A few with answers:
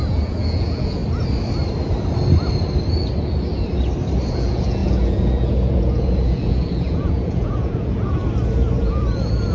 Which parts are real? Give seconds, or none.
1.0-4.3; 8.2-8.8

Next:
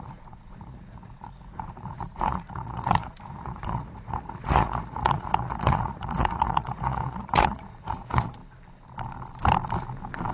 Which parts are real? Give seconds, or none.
8.4-10.3

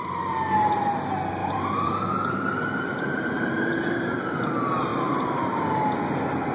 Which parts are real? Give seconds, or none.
0.0-1.4; 4.4-4.9; 5.6-6.5

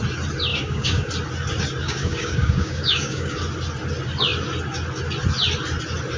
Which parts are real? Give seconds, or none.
0.0-0.5; 1.1-1.8; 3.4-6.2

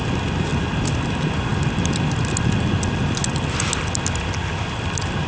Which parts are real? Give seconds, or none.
0.0-5.3

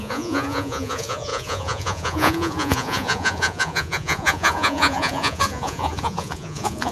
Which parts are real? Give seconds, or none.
none

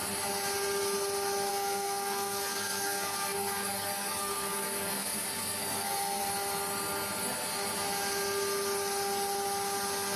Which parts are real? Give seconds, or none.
0.0-1.5; 6.2-10.2